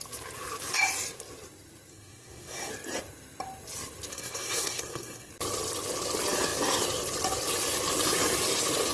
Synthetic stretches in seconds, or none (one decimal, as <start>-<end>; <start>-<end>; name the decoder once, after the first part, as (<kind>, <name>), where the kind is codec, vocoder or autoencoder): 1.9-2.7 (codec, SNAC); 4.1-5.3